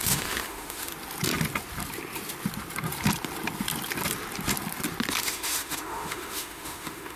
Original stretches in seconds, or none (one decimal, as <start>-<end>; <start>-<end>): 0.9-5.2